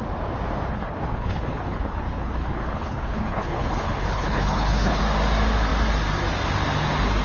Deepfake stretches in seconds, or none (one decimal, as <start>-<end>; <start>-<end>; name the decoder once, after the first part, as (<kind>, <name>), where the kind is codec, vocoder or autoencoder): 0.7-5.0 (codec, HILCodec)